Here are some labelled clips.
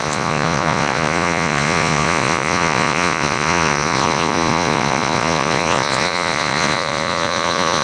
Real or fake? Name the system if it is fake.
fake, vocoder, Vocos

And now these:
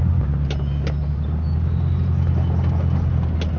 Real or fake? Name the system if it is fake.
real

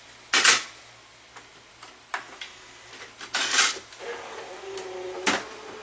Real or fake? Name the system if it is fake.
real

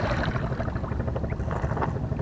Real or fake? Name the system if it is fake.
real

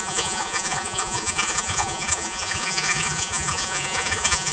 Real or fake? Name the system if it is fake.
fake, vocoder, Vocos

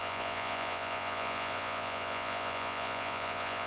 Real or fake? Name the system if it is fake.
fake, vocoder, Vocos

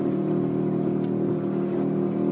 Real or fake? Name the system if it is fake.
real